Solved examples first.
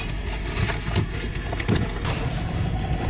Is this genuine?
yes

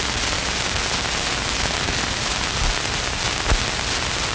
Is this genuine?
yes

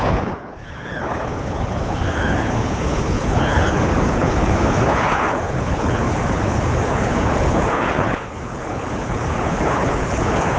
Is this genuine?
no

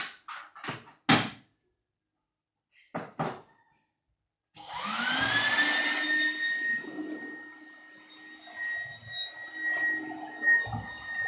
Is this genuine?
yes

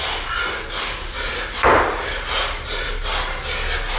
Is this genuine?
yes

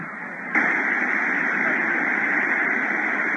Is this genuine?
no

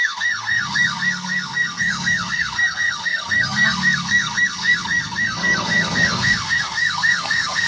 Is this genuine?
no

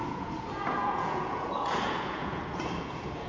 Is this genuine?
no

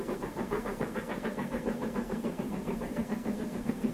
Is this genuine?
no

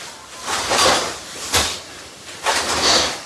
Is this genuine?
yes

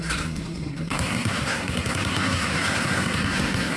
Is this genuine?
no